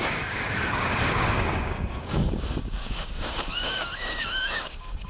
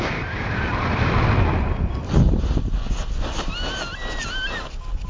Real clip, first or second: second